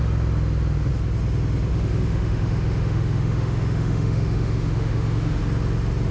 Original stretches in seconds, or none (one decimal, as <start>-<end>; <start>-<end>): 0.0-1.7; 5.4-6.1